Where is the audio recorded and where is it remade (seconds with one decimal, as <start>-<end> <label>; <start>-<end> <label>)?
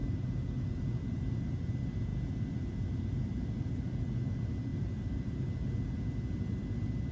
0.0-1.7 remade; 1.7-4.7 recorded; 4.7-5.7 remade; 5.7-7.1 recorded